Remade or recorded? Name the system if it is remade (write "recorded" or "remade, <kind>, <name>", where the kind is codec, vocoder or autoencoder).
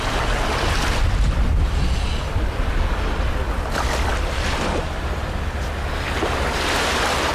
recorded